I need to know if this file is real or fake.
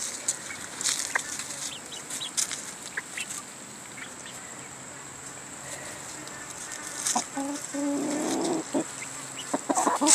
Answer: real